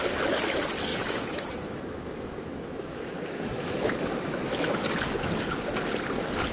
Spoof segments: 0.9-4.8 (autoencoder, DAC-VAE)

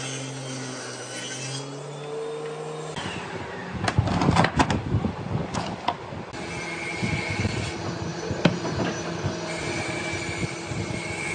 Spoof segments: none

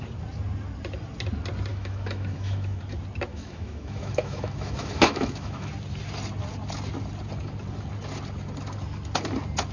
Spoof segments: 1.7-2.8 (autoencoder, DAC-VAE); 3.3-5.7